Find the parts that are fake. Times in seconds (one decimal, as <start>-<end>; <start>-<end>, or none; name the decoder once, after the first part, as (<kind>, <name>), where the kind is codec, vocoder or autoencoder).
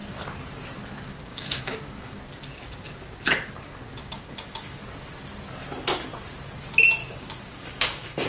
1.3-2.2 (codec, DAC); 4.0-4.8; 7.0-8.3